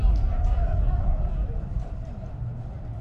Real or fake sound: real